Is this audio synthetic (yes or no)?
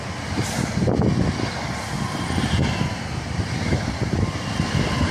no